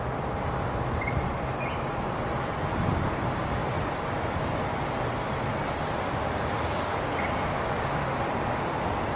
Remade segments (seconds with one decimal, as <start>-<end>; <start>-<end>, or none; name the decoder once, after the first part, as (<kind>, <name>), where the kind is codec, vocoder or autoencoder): none